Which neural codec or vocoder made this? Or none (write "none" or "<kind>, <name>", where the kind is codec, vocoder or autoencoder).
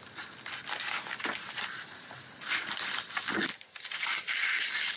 none